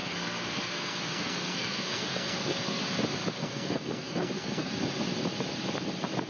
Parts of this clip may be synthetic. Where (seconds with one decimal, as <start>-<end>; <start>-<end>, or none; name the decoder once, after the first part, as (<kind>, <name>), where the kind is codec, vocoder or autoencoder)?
0.0-2.8 (codec, SNAC); 3.4-4.7